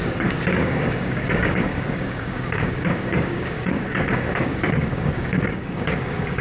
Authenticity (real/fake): fake